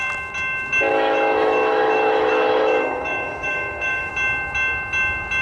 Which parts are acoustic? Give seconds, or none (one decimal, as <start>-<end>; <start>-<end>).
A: 0.0-0.9; 4.1-5.4